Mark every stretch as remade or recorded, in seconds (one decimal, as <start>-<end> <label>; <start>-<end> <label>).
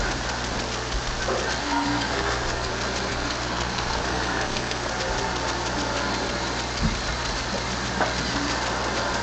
0.0-1.6 recorded; 1.6-2.7 remade; 2.7-3.1 recorded; 3.1-4.9 remade; 4.9-9.2 recorded